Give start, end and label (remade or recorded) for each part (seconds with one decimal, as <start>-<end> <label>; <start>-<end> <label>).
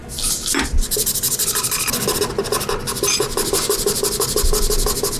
0.0-5.2 recorded